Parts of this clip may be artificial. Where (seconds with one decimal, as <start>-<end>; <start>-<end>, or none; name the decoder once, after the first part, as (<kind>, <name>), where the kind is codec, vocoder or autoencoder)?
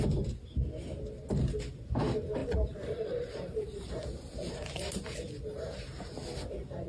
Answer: 2.4-3.9 (vocoder, BigVGAN v2)